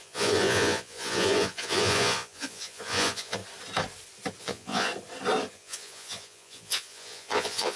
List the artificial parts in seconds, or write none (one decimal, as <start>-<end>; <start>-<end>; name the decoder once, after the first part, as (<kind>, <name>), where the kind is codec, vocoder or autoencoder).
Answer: 0.0-3.4 (vocoder, Vocos); 4.4-4.9; 5.5-7.8